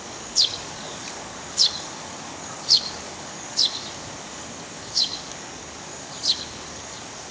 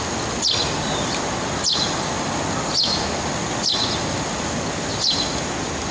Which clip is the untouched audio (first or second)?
second